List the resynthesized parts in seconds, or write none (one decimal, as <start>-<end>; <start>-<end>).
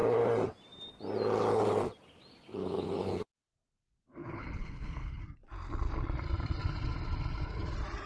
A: 2.5-5.2